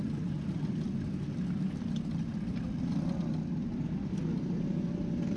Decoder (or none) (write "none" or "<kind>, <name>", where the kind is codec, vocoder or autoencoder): none